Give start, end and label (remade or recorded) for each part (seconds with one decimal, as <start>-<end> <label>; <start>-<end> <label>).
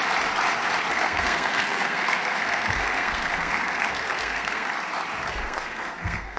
0.0-0.9 recorded; 0.9-4.7 remade; 4.7-5.3 recorded; 5.3-6.4 remade